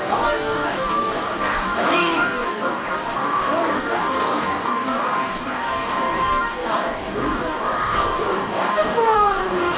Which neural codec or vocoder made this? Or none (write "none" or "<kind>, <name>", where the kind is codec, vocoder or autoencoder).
codec, DAC